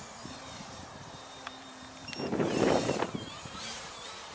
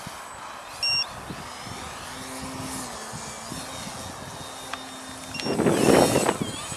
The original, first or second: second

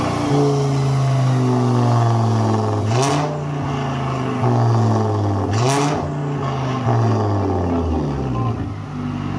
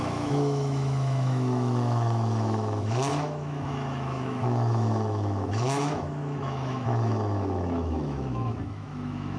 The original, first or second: first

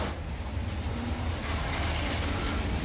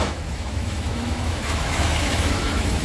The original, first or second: first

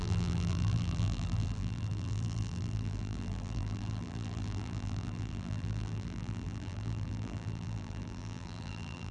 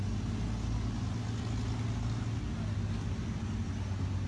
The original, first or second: second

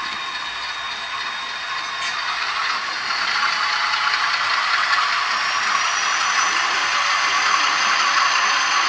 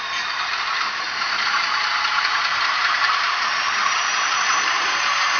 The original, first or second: first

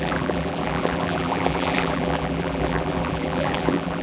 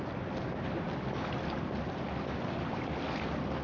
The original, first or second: second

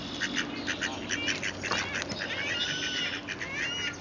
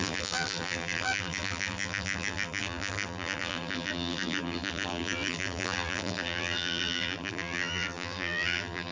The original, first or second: first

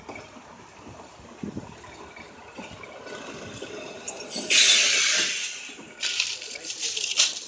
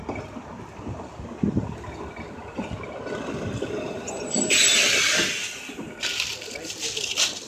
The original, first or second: second